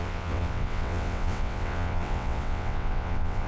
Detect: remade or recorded remade